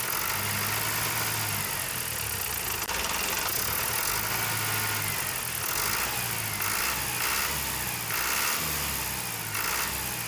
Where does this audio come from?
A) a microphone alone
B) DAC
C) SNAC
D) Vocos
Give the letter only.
A